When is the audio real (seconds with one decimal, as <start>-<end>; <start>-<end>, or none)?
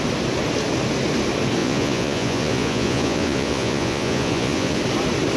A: 0.0-1.6; 4.8-5.4